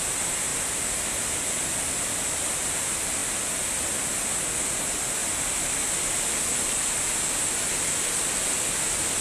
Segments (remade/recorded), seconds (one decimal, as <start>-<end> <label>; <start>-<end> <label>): 0.0-5.2 recorded; 5.2-5.9 remade; 5.9-9.2 recorded